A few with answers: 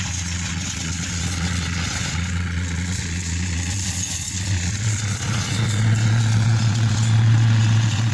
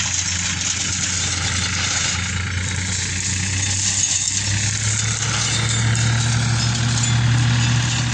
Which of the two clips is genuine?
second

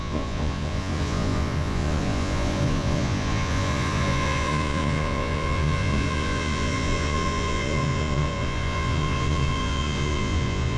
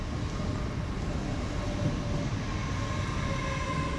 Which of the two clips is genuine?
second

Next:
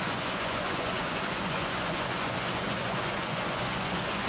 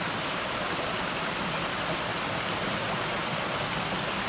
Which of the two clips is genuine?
second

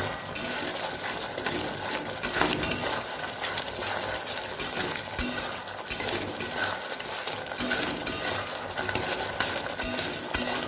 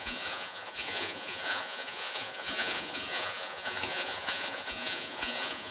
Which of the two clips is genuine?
first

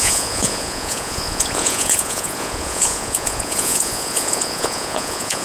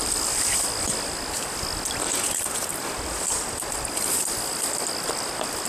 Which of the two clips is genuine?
second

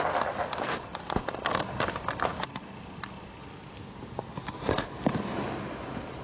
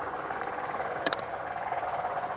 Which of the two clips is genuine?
first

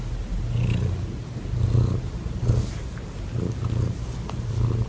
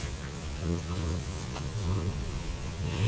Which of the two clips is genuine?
first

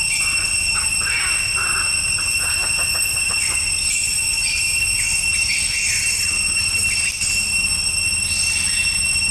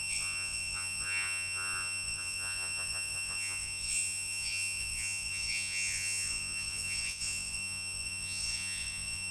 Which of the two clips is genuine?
first